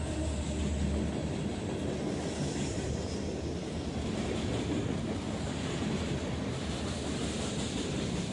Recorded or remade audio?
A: recorded